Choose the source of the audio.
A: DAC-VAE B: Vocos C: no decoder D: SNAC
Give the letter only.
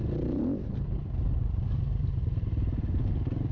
C